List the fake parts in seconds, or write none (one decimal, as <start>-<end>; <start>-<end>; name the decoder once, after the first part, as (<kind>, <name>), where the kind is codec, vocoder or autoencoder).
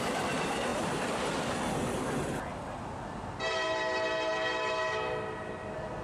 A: none